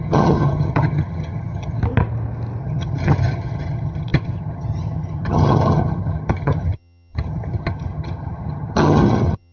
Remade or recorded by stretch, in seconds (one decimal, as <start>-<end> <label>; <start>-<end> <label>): 0.0-1.8 remade; 1.8-2.6 recorded; 2.6-9.5 remade